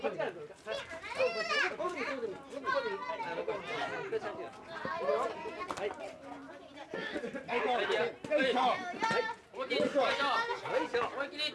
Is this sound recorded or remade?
recorded